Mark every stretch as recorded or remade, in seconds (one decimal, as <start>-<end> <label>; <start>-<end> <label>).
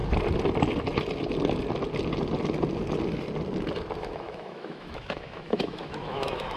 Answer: 0.0-4.0 recorded; 4.0-6.6 remade